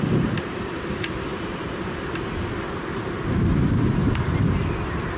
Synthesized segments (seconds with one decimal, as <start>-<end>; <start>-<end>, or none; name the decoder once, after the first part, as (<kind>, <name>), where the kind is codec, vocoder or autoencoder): none